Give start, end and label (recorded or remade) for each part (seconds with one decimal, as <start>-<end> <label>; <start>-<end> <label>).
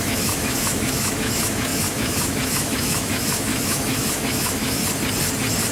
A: 0.0-4.8 remade; 4.8-5.7 recorded